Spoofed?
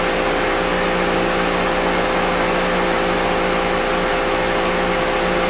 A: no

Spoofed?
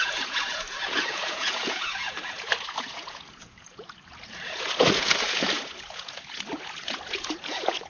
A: yes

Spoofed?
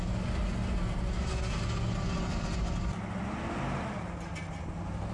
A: no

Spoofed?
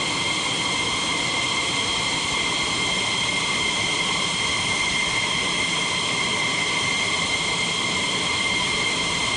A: no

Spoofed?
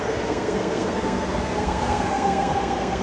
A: yes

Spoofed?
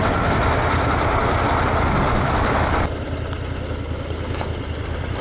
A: no